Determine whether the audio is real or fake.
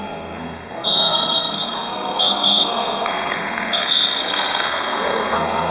fake